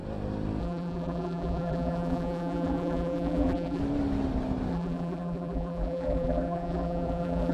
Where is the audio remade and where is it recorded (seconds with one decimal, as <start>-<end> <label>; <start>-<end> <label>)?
0.0-0.6 recorded; 0.6-3.8 remade; 3.8-4.7 recorded; 4.7-7.5 remade